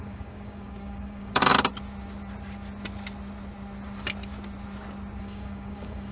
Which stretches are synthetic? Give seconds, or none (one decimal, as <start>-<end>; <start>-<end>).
0.0-1.5; 5.2-6.1